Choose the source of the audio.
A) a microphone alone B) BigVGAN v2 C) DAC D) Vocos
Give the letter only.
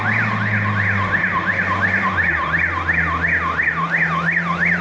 A